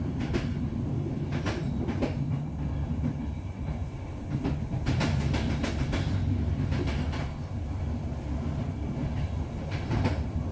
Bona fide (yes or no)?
yes